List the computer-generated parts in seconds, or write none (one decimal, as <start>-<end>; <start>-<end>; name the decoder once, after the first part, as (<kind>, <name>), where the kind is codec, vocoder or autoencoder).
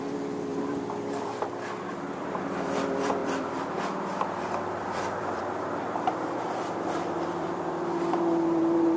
0.0-9.0 (vocoder, BigVGAN v2)